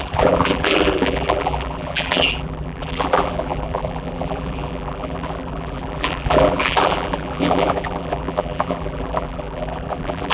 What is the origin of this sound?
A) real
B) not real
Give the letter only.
B